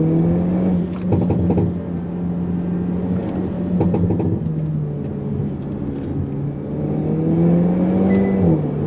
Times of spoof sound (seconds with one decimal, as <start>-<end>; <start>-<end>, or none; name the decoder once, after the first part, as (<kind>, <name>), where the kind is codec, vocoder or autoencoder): none